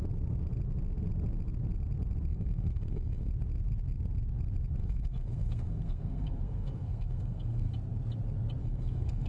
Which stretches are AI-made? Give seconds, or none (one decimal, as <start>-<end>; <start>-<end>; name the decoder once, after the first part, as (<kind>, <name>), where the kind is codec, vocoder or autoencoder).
2.3-3.3 (codec, SNAC); 4.8-7.7; 8.6-9.3